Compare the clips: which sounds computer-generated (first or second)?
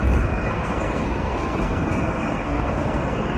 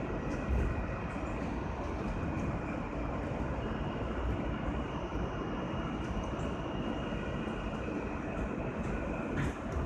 first